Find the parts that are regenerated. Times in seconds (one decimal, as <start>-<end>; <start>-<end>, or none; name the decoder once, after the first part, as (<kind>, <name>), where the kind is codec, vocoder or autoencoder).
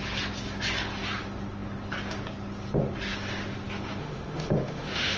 4.0-5.2 (autoencoder, DAC-VAE)